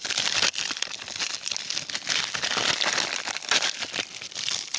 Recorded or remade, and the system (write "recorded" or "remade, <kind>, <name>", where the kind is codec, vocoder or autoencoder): remade, vocoder, BigVGAN v2